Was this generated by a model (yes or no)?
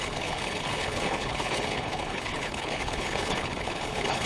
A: yes